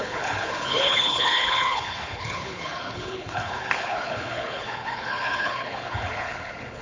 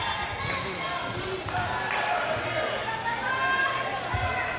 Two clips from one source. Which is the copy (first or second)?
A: first